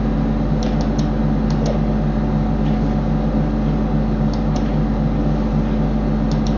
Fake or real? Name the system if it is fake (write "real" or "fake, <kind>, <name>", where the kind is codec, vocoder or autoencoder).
real